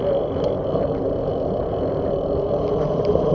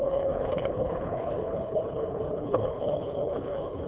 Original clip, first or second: first